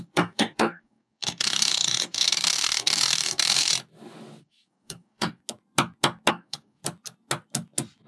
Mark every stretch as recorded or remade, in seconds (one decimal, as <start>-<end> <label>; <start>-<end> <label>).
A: 0.0-3.7 remade; 3.7-4.4 recorded; 4.4-5.4 remade; 5.4-6.3 recorded; 6.3-6.8 remade; 6.8-8.1 recorded